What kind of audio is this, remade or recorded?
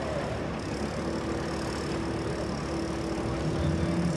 recorded